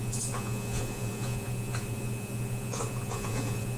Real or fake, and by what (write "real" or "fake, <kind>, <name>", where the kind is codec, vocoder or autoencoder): fake, vocoder, Vocos